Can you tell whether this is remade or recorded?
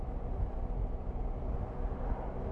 recorded